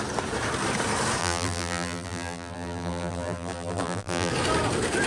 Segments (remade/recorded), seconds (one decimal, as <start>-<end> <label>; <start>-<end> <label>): 0.0-1.2 recorded; 1.2-4.3 remade; 4.3-5.1 recorded